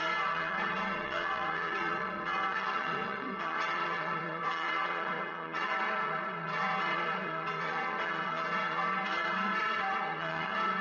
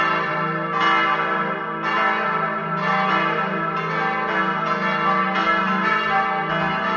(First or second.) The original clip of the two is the second